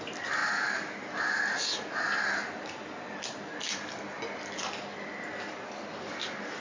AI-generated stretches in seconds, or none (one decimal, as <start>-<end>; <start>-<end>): none